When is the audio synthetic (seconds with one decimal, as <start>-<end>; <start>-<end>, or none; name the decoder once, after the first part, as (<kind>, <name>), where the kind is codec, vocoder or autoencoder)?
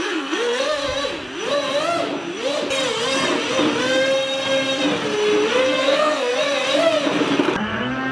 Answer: 0.0-0.8 (codec, SNAC); 5.6-6.3; 7.6-8.1